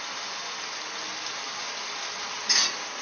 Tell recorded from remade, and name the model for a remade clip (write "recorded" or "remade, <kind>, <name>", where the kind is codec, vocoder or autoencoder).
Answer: recorded